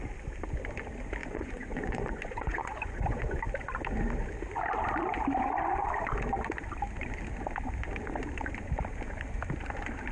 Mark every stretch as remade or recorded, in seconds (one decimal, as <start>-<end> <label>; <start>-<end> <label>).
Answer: 0.0-1.2 recorded; 1.2-3.4 remade; 3.4-10.1 recorded